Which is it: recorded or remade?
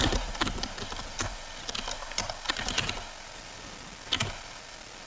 recorded